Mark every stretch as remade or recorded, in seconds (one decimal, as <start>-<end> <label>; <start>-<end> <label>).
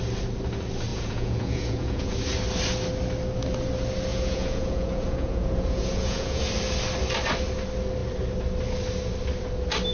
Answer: 0.0-0.9 recorded; 0.9-2.1 remade; 2.1-4.1 recorded; 4.1-6.5 remade; 6.5-9.9 recorded